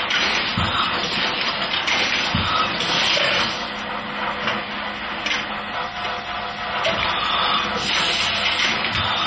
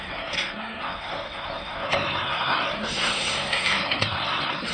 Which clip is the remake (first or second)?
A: second